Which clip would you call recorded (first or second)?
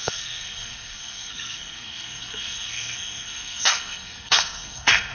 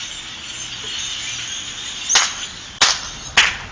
second